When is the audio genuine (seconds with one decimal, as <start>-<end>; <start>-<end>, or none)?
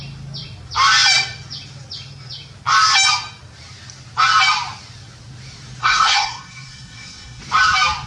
0.0-5.8; 7.4-8.1